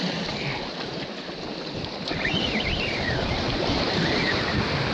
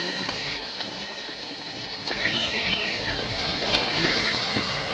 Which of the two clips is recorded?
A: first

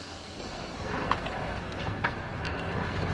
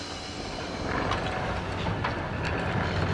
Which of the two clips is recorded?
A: second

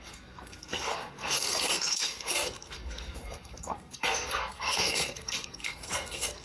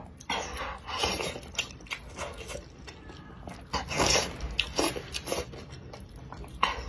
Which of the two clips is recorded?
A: second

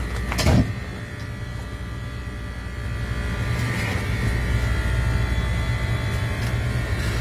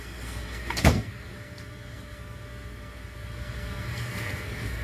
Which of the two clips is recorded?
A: first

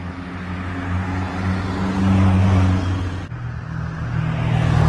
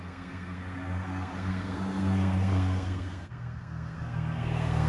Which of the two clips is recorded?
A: first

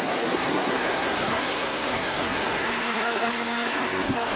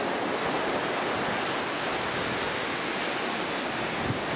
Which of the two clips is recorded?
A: second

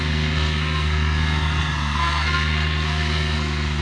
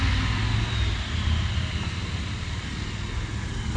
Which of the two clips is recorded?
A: second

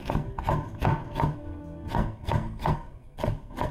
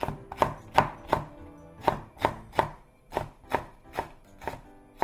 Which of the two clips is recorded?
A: second